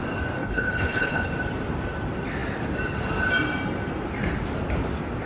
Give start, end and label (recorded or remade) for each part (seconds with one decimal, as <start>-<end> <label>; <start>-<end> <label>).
0.0-0.4 recorded; 0.4-1.3 remade; 1.3-5.3 recorded

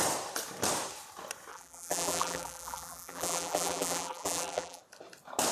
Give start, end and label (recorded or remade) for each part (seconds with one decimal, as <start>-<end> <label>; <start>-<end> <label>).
0.0-1.5 recorded; 1.5-4.8 remade; 4.8-5.5 recorded

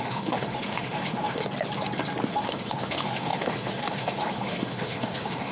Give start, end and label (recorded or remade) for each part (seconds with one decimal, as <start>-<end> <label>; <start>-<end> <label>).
0.0-1.4 remade; 1.4-2.3 recorded; 2.3-5.5 remade

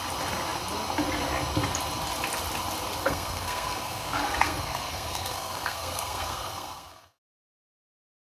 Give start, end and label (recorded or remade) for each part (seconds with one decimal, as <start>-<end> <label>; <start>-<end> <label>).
0.0-3.0 recorded; 3.0-8.3 remade

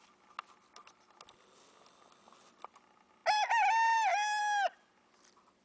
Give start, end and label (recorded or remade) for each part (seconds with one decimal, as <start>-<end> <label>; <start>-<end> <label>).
0.0-5.6 recorded

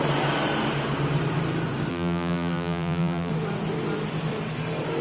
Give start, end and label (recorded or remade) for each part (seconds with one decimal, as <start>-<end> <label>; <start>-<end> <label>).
0.0-1.9 recorded; 1.9-3.3 remade; 3.3-5.0 recorded